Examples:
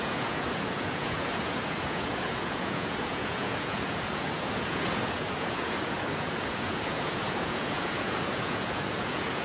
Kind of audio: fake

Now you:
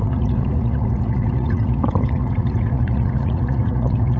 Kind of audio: fake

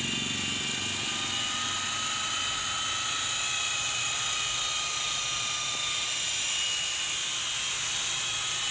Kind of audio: real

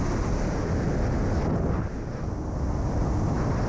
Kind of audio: real